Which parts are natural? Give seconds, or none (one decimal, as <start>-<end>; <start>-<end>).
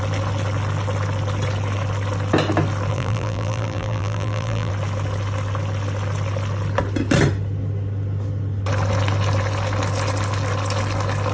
0.0-2.9; 4.7-11.3